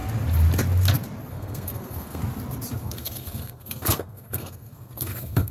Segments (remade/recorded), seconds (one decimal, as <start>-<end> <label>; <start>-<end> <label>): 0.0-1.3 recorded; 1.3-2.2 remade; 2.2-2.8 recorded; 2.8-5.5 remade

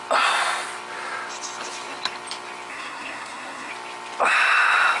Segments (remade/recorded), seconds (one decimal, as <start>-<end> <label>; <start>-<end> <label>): 0.0-2.7 recorded; 2.7-3.7 remade; 3.7-5.0 recorded

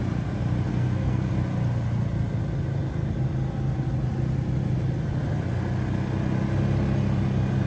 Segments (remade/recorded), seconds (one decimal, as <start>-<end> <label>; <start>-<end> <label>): 0.0-0.7 recorded; 0.7-1.3 remade; 1.3-7.7 recorded